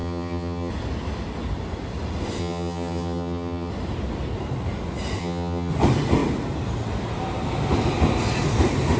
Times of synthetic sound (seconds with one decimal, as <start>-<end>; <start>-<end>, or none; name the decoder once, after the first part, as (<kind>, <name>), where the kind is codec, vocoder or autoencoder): 0.0-0.7 (vocoder, HiFi-GAN); 2.4-3.7; 5.2-5.7